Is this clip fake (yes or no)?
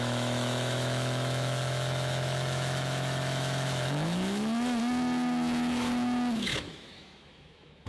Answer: yes